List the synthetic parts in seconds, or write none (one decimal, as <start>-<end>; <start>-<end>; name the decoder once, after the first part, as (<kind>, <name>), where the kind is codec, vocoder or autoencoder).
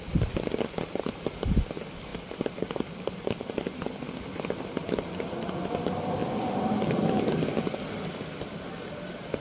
6.2-7.6 (vocoder, BigVGAN v2)